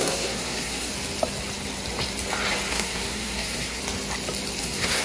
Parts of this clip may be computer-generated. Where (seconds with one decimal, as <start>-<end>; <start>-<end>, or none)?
0.0-0.9; 2.7-3.8; 4.6-5.0